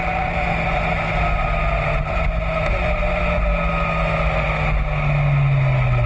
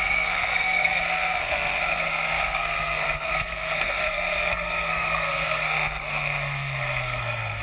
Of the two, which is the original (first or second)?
first